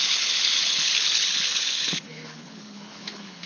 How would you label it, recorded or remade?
remade